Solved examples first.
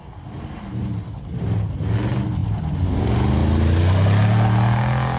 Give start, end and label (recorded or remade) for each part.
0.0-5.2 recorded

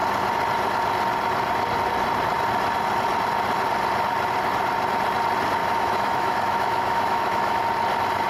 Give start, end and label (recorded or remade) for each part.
0.0-5.6 recorded; 5.6-7.6 remade; 7.6-8.3 recorded

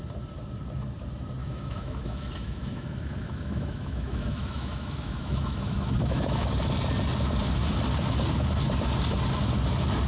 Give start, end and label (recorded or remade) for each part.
0.0-1.4 recorded; 1.4-6.5 remade; 6.5-10.1 recorded

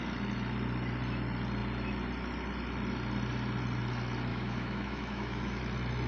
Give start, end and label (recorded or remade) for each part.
0.0-4.3 recorded; 4.3-5.6 remade; 5.6-6.1 recorded

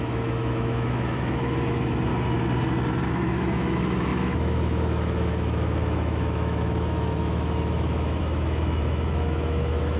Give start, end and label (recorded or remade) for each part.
0.0-2.1 remade; 2.1-3.1 recorded; 3.1-10.0 remade

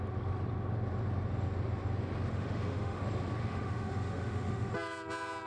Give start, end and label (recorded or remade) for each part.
0.0-2.3 recorded; 2.3-3.0 remade; 3.0-3.4 recorded; 3.4-4.7 remade; 4.7-5.5 recorded

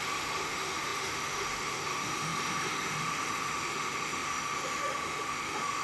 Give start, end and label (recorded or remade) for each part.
0.0-5.8 remade

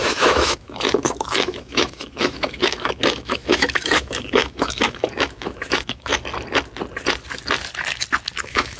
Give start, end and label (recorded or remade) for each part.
0.0-6.1 remade; 6.1-8.4 recorded; 8.4-8.8 remade